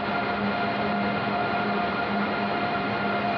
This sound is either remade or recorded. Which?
recorded